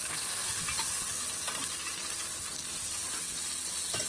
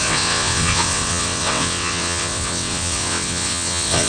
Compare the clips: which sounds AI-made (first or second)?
second